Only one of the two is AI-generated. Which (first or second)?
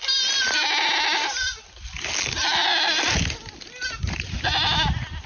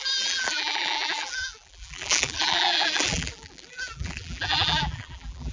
second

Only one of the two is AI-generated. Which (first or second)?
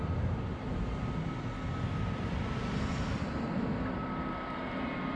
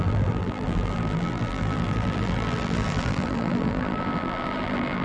second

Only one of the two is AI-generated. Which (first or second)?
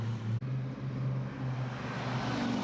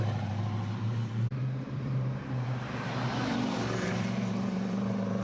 second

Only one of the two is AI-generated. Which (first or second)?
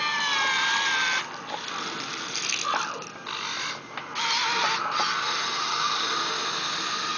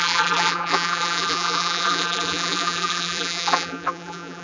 second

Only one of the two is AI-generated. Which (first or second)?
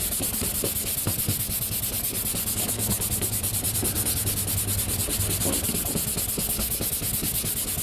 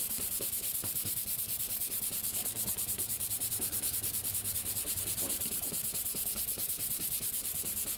second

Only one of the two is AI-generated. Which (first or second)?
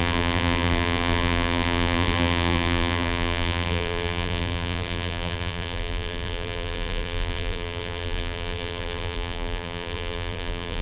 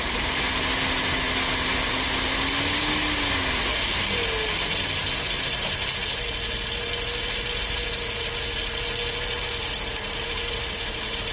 first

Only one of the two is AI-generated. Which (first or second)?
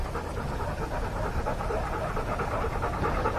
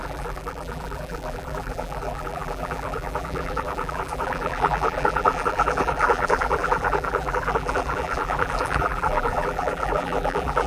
second